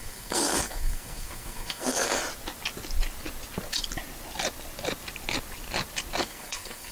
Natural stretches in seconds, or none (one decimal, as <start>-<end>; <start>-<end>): 2.2-6.2

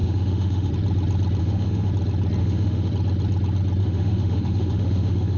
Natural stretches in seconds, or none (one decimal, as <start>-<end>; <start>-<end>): 0.7-1.4; 1.9-2.4; 2.9-3.8